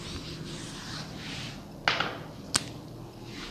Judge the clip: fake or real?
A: real